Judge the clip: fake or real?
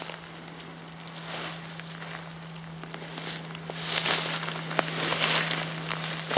real